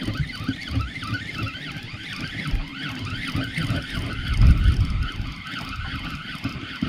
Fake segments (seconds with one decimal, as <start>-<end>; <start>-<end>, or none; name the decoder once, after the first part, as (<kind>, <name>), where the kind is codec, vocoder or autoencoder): none